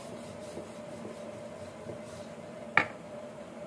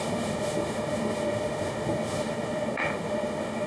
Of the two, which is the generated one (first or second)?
second